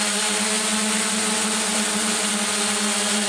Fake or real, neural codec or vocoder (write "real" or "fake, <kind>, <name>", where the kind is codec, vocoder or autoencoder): real